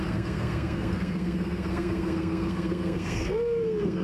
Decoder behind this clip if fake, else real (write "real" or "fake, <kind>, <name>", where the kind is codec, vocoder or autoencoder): fake, codec, SNAC